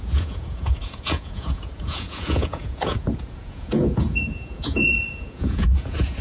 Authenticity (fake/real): fake